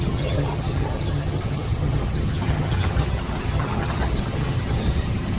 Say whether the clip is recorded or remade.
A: remade